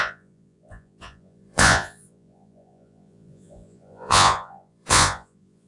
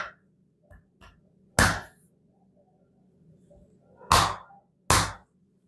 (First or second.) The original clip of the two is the second